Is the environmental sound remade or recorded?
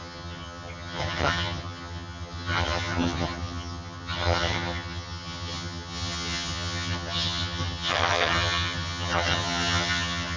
remade